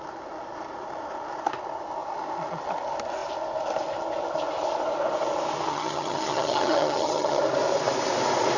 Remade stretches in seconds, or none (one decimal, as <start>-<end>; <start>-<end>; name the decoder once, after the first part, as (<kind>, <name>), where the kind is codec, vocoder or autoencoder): 5.7-7.4 (vocoder, HiFi-GAN)